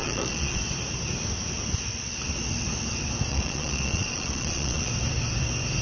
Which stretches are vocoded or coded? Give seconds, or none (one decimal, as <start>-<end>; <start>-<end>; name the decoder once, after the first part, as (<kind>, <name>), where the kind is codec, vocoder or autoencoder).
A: 0.0-0.6 (vocoder, Vocos); 3.3-4.9